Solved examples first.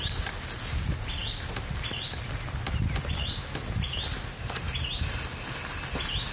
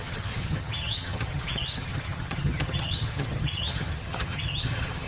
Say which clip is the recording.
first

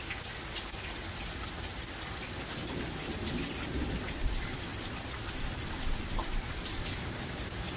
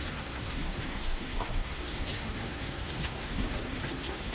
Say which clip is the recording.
first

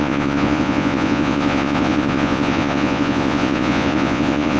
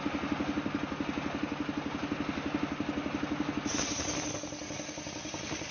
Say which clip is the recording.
second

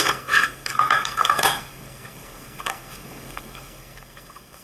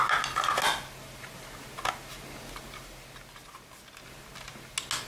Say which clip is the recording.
second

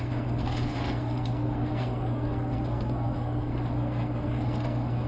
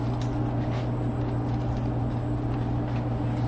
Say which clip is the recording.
second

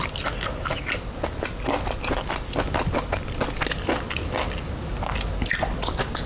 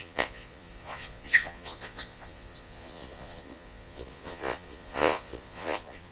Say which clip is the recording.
first